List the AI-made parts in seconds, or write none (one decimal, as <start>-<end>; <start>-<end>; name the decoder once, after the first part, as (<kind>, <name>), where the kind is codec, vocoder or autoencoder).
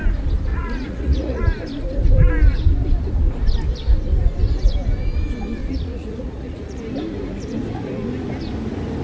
0.5-1.4 (vocoder, Vocos); 5.6-6.8